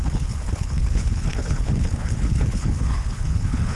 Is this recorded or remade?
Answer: remade